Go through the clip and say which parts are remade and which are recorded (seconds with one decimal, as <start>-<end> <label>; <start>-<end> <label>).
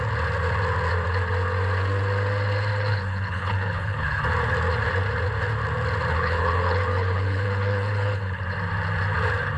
0.0-2.7 recorded; 2.7-4.2 remade; 4.2-6.1 recorded; 6.1-8.4 remade; 8.4-9.6 recorded